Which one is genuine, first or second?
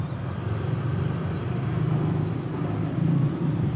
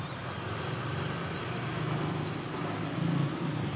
second